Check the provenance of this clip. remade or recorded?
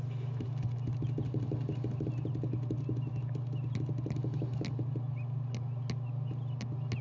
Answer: recorded